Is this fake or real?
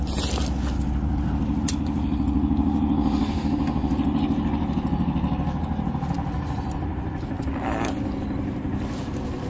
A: real